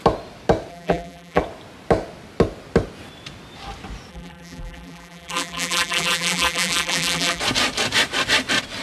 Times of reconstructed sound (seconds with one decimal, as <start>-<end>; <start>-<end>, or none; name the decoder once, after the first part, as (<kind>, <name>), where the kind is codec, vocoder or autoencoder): 0.7-1.4 (vocoder, BigVGAN v2); 4.1-7.4